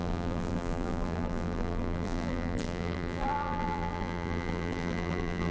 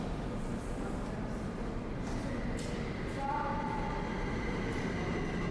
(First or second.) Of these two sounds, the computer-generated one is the first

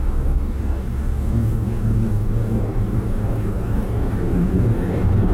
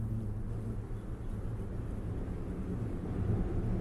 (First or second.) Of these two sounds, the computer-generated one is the first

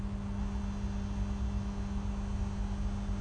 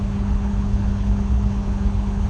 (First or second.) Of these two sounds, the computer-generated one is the second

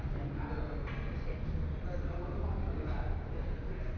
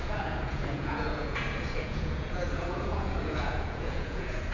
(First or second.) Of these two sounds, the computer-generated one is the second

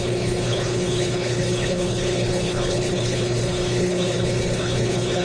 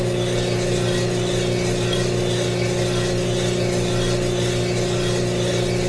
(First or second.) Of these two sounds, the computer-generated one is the first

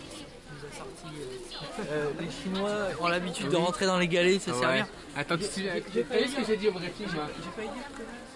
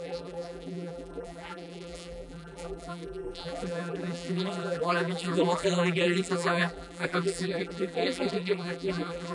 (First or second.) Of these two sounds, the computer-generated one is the second